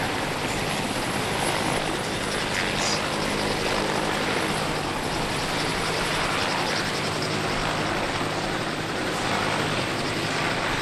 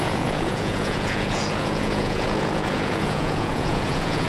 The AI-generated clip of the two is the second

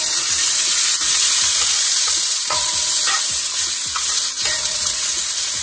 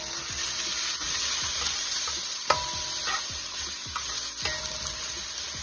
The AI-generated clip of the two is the first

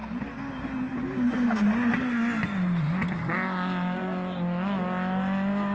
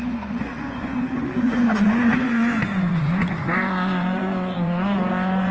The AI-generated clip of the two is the second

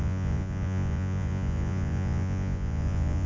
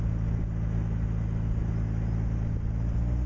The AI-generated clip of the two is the first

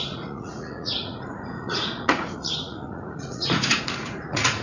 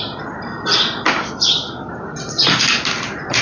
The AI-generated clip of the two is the first